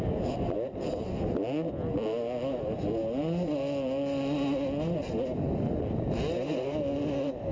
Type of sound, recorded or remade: recorded